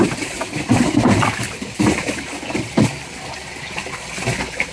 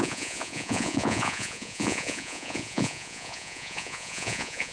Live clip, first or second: first